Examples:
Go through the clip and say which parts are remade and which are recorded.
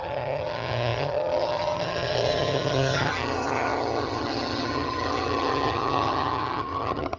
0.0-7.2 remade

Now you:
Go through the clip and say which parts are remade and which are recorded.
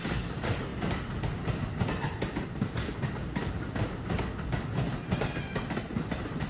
0.0-6.5 recorded